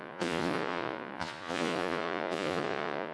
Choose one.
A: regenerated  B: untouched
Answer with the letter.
A